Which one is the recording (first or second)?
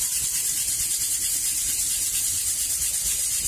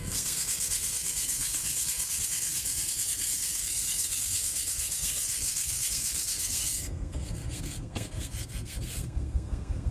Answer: first